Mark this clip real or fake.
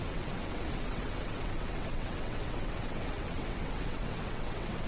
fake